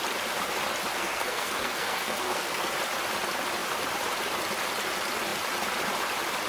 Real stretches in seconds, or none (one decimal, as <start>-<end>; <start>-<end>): 0.0-0.9; 2.7-6.5